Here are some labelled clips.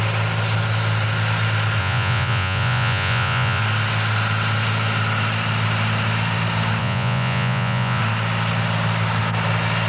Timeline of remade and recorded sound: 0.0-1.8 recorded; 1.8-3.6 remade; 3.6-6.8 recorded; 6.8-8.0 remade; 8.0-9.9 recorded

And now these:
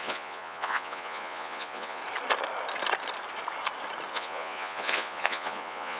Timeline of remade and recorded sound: 0.0-2.0 remade; 2.0-4.1 recorded; 4.1-6.0 remade

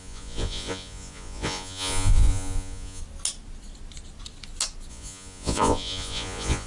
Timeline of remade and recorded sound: 0.0-3.0 remade; 3.0-4.9 recorded; 4.9-6.7 remade

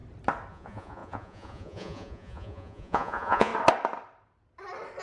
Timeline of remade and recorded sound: 0.0-0.5 recorded; 0.5-3.5 remade; 3.5-5.0 recorded

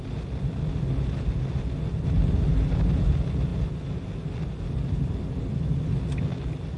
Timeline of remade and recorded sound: 0.0-6.8 recorded

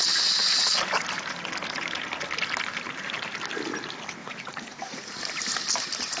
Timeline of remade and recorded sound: 0.0-4.2 recorded; 4.2-5.2 remade; 5.2-6.2 recorded

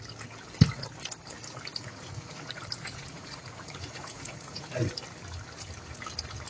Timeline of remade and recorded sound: 0.0-1.7 recorded; 1.7-4.8 remade; 4.8-6.5 recorded